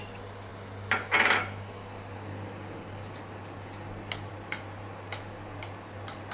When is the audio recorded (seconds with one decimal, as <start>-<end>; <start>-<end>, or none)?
0.0-6.3